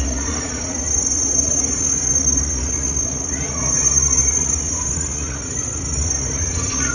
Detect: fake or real fake